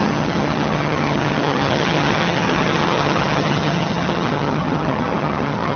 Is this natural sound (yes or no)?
no